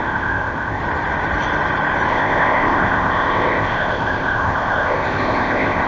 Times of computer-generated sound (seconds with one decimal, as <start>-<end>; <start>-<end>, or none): 0.0-0.8; 2.1-5.9